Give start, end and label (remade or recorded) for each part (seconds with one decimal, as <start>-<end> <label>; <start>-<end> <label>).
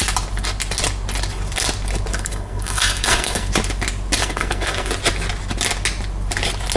0.0-2.1 recorded; 2.1-3.5 remade; 3.5-4.2 recorded; 4.2-4.9 remade; 4.9-6.8 recorded